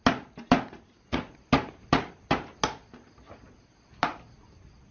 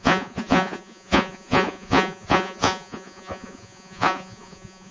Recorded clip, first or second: first